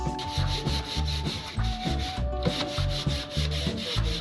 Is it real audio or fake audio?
real